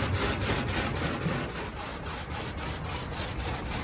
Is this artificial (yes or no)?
no